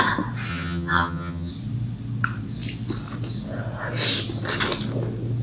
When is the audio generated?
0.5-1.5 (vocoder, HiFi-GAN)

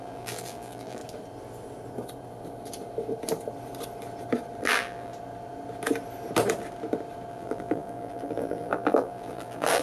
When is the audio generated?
0.0-1.0 (vocoder, BigVGAN v2); 4.6-5.1; 7.3-9.8

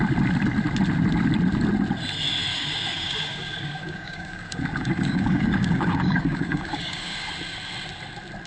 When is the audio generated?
2.5-7.3 (codec, DAC)

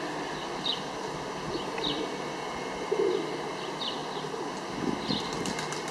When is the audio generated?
none